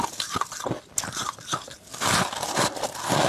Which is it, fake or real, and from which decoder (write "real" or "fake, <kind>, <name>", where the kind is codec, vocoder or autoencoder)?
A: real